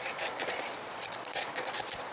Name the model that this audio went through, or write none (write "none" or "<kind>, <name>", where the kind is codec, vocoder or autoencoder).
vocoder, Vocos